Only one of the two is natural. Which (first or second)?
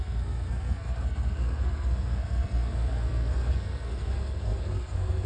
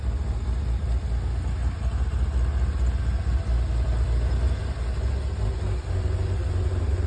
second